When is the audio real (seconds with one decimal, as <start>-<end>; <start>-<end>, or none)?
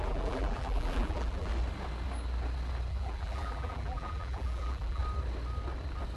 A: 1.5-2.9; 5.0-6.2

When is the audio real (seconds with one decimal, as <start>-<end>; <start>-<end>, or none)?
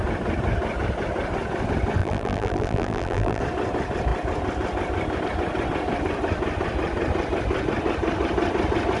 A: 0.0-2.0; 3.4-9.0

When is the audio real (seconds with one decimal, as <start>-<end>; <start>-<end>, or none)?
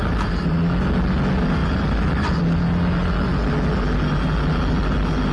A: 0.0-1.6; 2.3-5.3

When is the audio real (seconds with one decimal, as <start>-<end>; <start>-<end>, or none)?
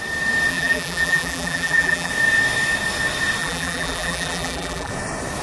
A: 0.0-0.5; 2.1-3.4; 4.9-5.4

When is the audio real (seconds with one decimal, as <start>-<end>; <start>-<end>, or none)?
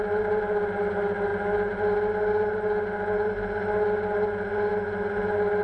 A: 0.0-5.6